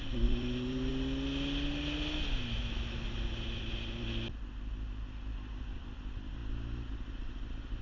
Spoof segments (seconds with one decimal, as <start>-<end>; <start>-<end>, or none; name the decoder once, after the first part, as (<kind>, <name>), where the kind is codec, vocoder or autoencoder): 0.0-0.9 (vocoder, BigVGAN v2); 5.6-6.4